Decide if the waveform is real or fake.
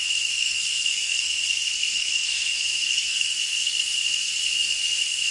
fake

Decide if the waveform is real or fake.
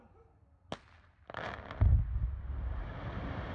real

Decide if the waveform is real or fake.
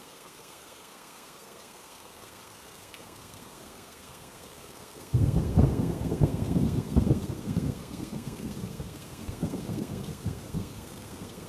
fake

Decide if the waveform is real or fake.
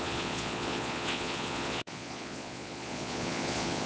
fake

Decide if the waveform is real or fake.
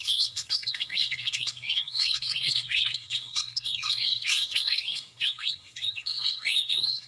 fake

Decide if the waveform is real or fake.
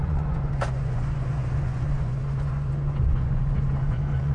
fake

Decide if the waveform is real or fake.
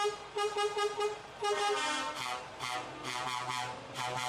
fake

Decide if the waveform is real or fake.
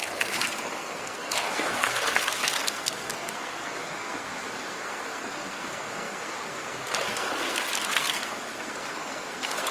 fake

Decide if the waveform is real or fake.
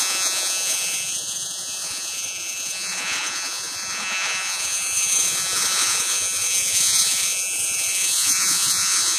fake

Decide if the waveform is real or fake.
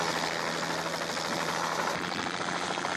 real